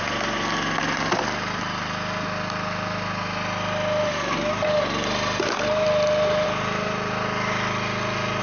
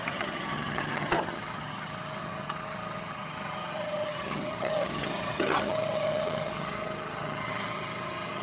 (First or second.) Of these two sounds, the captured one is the first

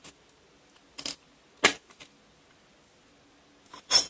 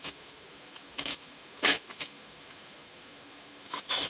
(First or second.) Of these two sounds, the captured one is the first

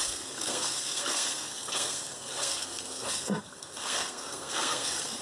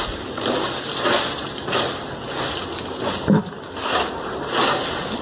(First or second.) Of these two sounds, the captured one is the second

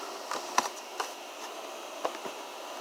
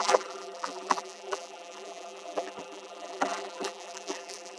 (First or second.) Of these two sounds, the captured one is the first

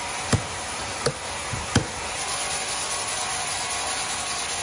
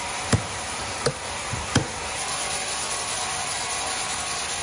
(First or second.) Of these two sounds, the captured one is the first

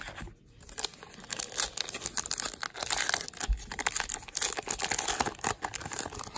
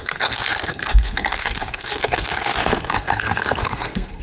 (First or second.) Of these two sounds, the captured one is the first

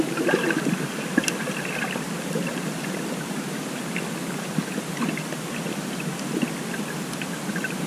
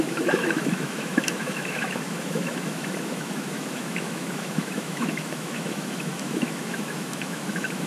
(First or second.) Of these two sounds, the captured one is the first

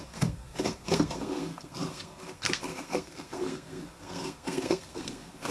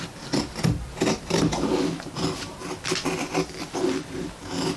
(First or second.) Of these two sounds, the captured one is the second